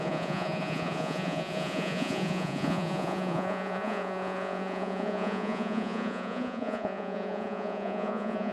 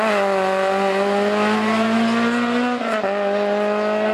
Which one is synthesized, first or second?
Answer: first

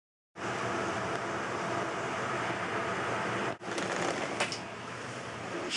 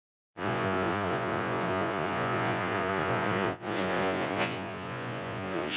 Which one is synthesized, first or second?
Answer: second